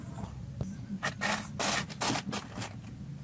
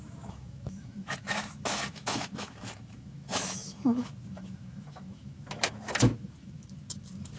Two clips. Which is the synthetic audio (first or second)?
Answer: second